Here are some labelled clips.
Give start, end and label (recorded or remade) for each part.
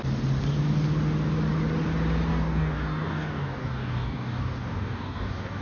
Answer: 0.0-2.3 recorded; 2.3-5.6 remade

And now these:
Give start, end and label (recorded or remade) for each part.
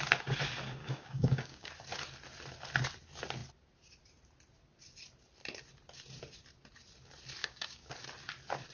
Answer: 0.0-0.8 recorded; 0.8-1.7 remade; 1.7-7.4 recorded; 7.4-7.9 remade; 7.9-8.7 recorded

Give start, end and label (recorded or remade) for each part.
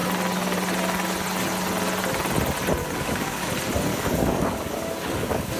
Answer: 0.0-2.8 recorded; 2.8-3.5 remade; 3.5-3.9 recorded; 3.9-5.6 remade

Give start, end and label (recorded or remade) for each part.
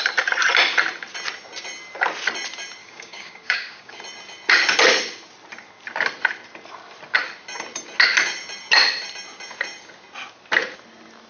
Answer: 0.0-2.8 recorded; 2.8-4.0 remade; 4.0-11.3 recorded